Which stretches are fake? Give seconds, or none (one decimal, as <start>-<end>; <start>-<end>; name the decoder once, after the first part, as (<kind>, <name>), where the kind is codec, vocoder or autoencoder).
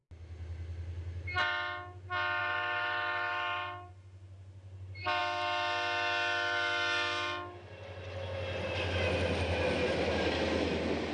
2.4-3.9 (vocoder, BigVGAN v2)